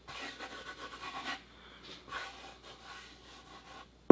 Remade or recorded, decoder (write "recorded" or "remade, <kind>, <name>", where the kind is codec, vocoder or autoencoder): recorded